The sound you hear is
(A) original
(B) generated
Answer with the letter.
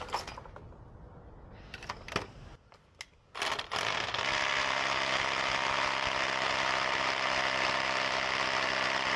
A